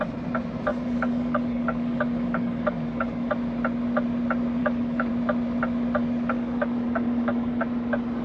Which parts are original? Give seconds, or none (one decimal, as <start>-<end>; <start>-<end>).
0.0-0.7; 3.3-4.6; 5.1-6.0; 7.6-8.2